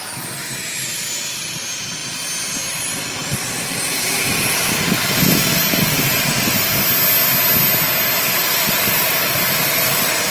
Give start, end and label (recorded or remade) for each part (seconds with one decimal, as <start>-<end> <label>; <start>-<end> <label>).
0.0-10.3 recorded